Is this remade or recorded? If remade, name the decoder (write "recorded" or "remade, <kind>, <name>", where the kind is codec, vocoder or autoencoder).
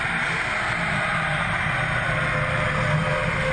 recorded